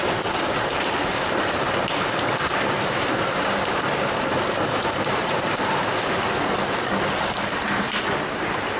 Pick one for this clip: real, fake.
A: real